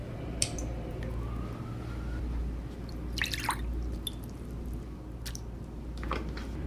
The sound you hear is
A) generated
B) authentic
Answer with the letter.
B